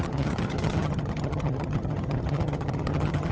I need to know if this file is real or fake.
fake